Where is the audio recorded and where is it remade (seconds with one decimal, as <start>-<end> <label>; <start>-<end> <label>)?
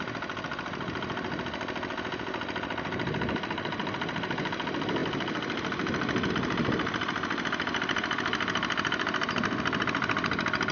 0.0-10.7 recorded